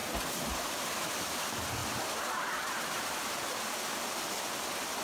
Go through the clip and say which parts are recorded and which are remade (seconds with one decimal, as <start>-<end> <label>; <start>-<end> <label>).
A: 0.0-1.8 recorded; 1.8-4.3 remade; 4.3-5.0 recorded